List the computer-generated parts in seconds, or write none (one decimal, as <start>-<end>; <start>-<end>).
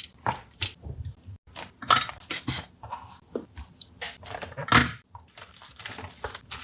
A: none